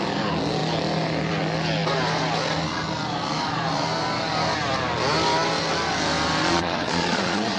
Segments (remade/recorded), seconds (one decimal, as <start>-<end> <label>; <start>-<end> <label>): 0.0-6.4 recorded; 6.4-7.6 remade

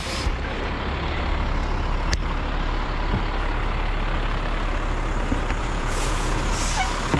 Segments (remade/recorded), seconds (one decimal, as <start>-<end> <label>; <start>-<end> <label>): 0.0-5.6 recorded; 5.6-6.4 remade; 6.4-7.2 recorded

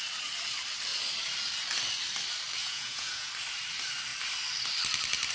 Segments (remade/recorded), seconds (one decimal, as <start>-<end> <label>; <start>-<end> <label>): 0.0-2.6 recorded; 2.6-3.3 remade; 3.3-5.3 recorded

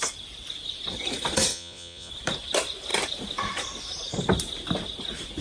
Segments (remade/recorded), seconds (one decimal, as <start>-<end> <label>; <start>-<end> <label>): 0.0-1.5 recorded; 1.5-2.1 remade; 2.1-5.4 recorded

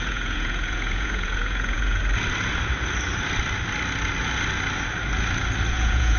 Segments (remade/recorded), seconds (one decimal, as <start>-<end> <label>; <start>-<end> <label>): 0.0-2.0 remade; 2.0-5.7 recorded; 5.7-6.2 remade

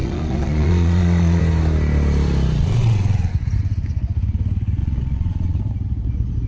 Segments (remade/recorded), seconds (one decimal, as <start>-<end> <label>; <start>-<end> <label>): 0.0-1.4 remade; 1.4-2.6 recorded; 2.6-3.3 remade; 3.3-4.8 recorded; 4.8-5.6 remade; 5.6-6.5 recorded